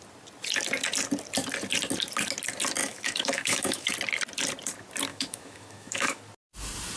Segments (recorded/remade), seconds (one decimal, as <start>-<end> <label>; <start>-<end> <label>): 0.0-2.8 recorded; 2.8-3.9 remade; 3.9-5.1 recorded; 5.1-6.2 remade; 6.2-7.0 recorded